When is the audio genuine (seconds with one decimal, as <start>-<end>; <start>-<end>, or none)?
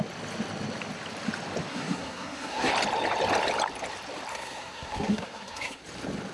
0.0-1.7; 2.7-4.3; 5.8-6.3